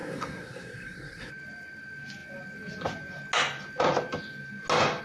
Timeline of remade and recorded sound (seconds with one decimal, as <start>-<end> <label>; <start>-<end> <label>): 0.0-1.3 remade; 1.3-5.0 recorded

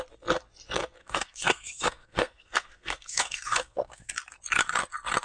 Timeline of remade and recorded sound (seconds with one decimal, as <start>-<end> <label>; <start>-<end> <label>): 0.0-1.0 recorded; 1.0-4.1 remade; 4.1-5.2 recorded

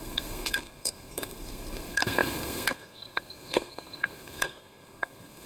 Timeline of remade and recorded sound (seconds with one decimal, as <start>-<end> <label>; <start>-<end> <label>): 0.0-5.5 remade

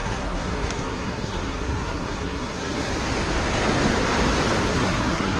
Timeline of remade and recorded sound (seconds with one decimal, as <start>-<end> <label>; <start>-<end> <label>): 0.0-2.9 remade; 2.9-4.7 recorded; 4.7-5.4 remade

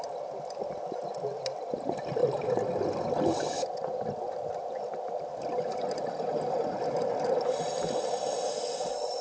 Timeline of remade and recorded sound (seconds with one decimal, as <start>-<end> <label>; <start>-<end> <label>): 0.0-9.2 recorded